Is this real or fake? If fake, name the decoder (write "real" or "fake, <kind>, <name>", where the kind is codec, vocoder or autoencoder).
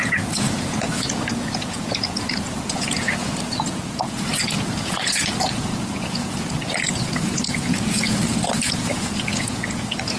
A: fake, vocoder, Vocos